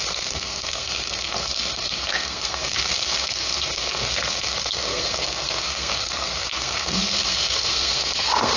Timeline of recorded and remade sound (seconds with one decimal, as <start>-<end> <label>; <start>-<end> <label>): 0.0-8.6 remade